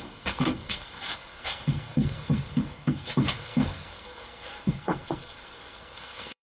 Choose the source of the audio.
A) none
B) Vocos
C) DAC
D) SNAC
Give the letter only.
D